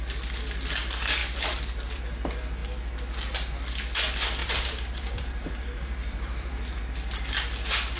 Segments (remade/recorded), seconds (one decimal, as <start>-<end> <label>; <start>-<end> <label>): 0.0-1.2 recorded; 1.2-2.0 remade; 2.0-4.4 recorded; 4.4-6.8 remade; 6.8-8.0 recorded